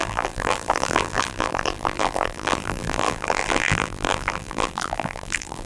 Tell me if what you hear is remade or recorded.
remade